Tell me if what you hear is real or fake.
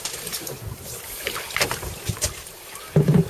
fake